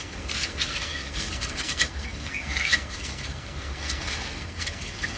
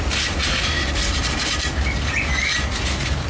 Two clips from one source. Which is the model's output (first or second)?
first